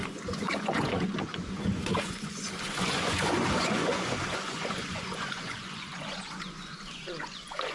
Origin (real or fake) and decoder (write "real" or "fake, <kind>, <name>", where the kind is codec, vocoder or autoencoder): fake, vocoder, Vocos